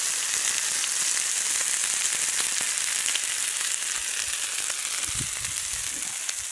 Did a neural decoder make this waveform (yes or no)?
no